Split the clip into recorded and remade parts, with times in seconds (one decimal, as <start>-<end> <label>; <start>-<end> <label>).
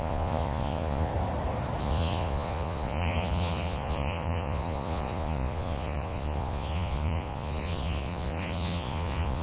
0.0-1.1 remade; 1.1-1.8 recorded; 1.8-9.4 remade